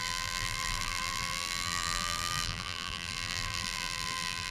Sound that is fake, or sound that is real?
fake